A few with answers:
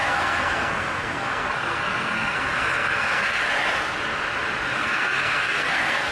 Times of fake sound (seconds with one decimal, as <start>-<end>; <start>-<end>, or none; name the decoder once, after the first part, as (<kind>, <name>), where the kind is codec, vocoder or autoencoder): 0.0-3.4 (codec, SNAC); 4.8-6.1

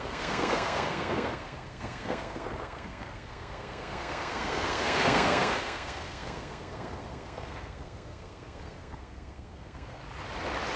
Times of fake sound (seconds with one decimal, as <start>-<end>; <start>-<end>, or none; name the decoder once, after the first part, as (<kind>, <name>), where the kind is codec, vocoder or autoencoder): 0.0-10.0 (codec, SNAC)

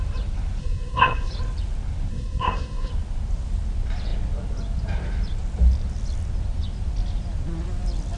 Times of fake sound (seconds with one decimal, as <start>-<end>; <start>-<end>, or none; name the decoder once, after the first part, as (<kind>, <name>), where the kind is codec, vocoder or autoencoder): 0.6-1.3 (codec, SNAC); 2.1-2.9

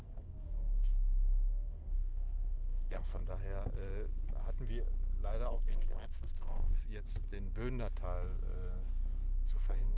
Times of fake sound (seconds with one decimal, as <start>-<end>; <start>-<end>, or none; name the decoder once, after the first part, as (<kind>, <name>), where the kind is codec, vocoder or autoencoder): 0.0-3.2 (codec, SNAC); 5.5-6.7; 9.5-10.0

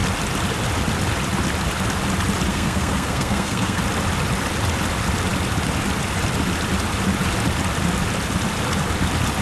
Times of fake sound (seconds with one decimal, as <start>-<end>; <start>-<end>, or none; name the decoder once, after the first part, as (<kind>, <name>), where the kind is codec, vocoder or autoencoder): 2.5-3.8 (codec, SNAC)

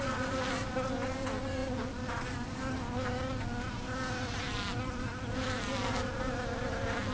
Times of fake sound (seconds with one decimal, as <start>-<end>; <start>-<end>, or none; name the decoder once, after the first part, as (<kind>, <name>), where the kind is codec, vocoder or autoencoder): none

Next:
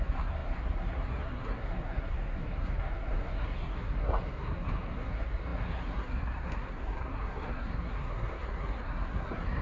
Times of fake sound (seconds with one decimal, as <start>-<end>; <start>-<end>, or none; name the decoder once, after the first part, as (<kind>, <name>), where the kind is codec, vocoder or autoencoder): 0.0-9.6 (codec, SNAC)